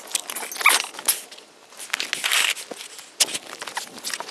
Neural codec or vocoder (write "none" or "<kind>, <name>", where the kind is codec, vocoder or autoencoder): none